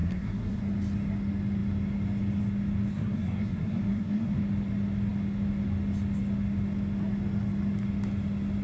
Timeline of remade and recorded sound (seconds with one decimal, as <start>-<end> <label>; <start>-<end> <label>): 0.0-0.6 remade; 0.6-2.9 recorded; 2.9-4.4 remade; 4.4-8.6 recorded